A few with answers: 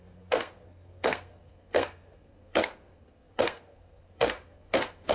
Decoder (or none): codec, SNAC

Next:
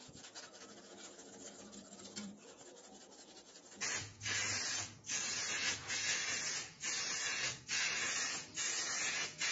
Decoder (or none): vocoder, Vocos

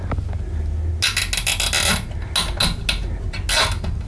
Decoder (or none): none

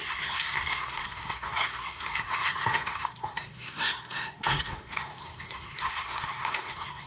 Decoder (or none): codec, SNAC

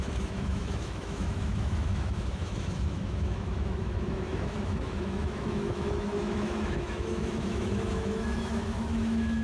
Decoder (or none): autoencoder, DAC-VAE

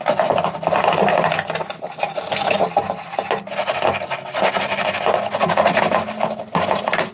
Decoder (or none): none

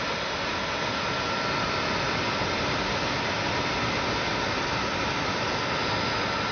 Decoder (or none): none